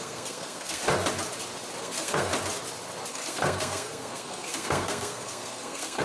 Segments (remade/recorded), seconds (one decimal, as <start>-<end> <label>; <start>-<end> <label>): 0.0-0.8 remade; 0.8-1.8 recorded; 1.8-2.3 remade; 2.3-3.1 recorded; 3.1-6.0 remade

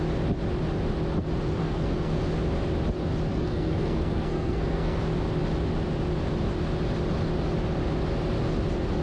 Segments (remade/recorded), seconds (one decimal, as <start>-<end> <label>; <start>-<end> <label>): 0.0-1.6 recorded; 1.6-2.2 remade; 2.2-3.3 recorded; 3.3-5.0 remade; 5.0-9.0 recorded

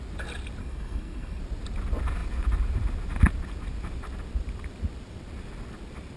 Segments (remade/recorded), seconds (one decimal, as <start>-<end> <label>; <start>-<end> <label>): 0.0-0.6 recorded; 0.6-1.4 remade; 1.4-6.2 recorded